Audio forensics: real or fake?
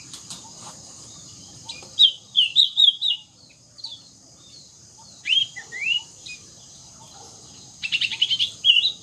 fake